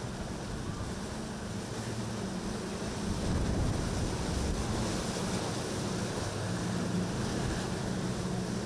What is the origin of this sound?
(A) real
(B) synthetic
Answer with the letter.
A